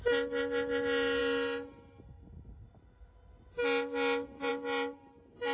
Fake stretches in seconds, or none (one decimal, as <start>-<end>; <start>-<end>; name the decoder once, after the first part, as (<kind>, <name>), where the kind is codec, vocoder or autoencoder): none